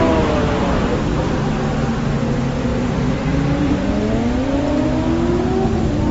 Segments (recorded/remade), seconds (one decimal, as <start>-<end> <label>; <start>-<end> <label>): 0.0-0.9 recorded; 0.9-1.5 remade; 1.5-2.7 recorded; 2.7-3.6 remade; 3.6-6.1 recorded